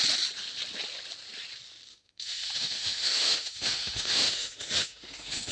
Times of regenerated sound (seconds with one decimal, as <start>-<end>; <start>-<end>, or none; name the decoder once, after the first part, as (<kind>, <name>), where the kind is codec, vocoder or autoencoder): 1.9-5.5 (autoencoder, DAC-VAE)